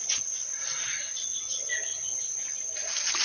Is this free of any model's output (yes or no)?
yes